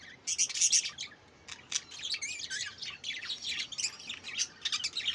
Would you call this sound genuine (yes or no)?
yes